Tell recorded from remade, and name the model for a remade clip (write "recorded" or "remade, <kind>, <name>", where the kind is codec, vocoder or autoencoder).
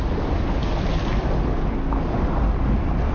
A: recorded